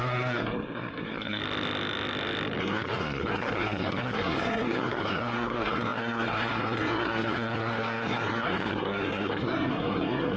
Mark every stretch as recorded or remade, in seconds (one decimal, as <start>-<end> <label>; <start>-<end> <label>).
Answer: 0.0-1.4 remade; 1.4-2.6 recorded; 2.6-10.4 remade